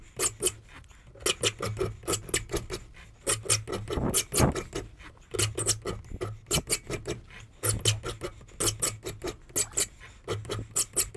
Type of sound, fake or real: real